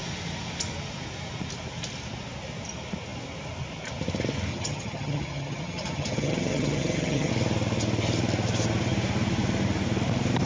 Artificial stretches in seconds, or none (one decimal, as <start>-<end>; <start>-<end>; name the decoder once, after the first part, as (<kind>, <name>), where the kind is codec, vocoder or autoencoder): 4.5-7.3 (vocoder, HiFi-GAN)